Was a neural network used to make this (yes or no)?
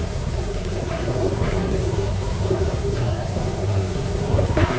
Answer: yes